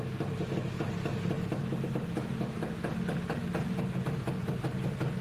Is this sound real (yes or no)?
yes